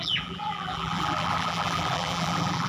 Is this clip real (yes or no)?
no